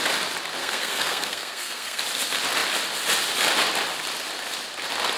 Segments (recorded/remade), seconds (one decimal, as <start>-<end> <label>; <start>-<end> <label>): 0.0-0.6 recorded; 0.6-2.0 remade; 2.0-5.2 recorded